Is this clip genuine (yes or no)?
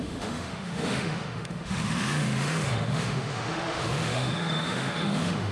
no